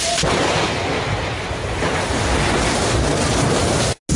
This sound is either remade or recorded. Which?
recorded